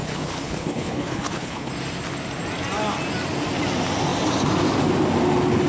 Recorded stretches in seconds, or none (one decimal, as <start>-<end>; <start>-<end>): 1.7-5.7